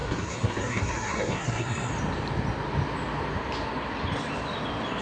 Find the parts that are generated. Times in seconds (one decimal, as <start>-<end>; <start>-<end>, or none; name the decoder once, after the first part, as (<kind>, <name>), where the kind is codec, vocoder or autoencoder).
0.0-1.9 (codec, SNAC)